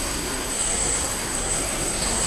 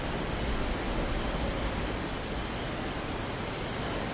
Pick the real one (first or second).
second